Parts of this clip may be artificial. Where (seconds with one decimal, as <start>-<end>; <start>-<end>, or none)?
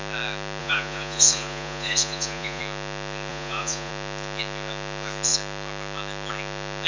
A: 0.6-2.6; 3.3-3.9